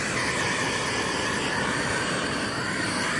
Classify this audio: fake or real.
real